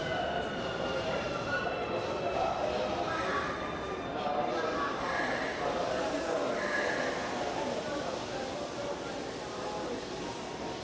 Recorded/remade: recorded